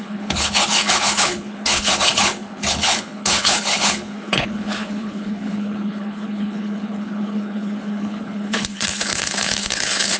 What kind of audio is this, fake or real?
fake